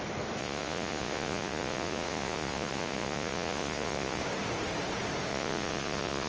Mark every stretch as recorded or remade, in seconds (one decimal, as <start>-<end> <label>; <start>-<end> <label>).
0.0-0.4 recorded; 0.4-4.2 remade; 4.2-5.3 recorded; 5.3-6.3 remade